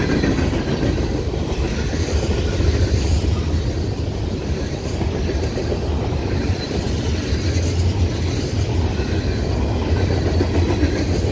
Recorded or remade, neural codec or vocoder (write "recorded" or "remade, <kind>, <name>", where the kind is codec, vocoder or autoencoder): recorded